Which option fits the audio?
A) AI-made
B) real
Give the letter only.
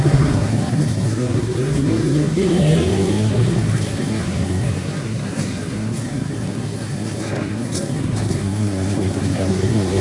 A